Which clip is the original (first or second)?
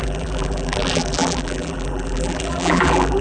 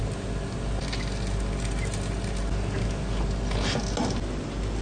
second